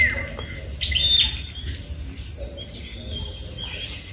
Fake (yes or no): no